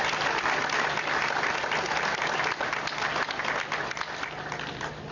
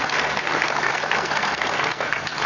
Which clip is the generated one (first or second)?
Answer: second